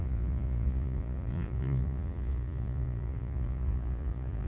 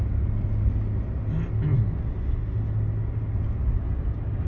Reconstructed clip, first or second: first